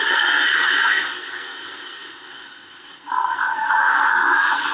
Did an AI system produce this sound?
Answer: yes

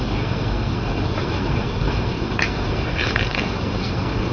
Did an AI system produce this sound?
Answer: yes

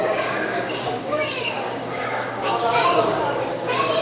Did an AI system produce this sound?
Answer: yes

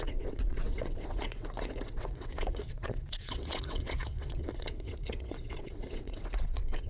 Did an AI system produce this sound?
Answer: yes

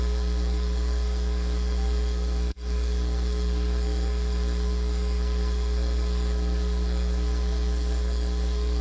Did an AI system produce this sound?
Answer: yes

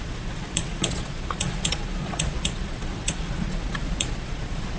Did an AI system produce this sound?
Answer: yes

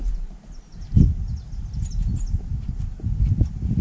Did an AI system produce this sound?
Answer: no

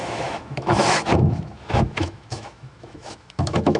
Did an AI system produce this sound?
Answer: yes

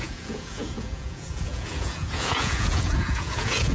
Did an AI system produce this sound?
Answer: yes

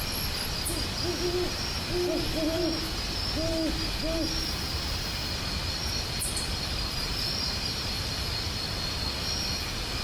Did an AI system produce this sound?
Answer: no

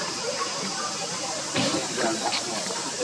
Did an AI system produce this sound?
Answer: yes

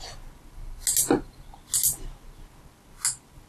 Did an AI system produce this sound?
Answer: no